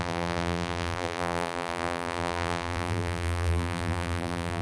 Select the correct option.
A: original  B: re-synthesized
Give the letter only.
B